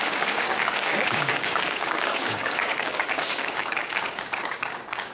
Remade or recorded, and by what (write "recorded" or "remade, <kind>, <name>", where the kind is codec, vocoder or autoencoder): remade, codec, DAC